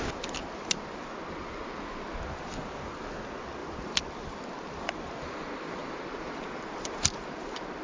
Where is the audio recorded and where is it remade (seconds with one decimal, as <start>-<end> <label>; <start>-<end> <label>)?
0.0-3.6 recorded; 3.6-4.9 remade; 4.9-5.8 recorded; 5.8-7.8 remade